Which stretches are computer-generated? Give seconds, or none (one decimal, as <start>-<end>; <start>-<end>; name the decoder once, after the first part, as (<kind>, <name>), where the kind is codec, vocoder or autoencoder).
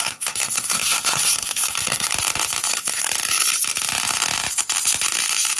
0.0-2.1 (codec, SNAC); 2.7-3.1